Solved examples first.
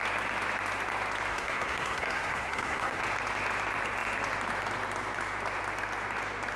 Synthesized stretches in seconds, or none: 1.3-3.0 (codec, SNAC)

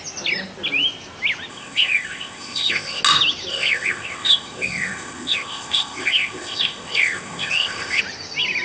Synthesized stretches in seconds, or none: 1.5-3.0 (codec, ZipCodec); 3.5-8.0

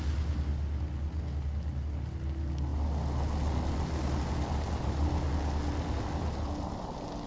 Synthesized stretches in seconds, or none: none